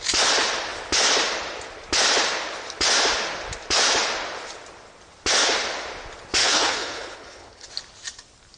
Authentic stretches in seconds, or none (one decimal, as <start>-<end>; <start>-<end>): 0.0-6.4; 7.7-8.6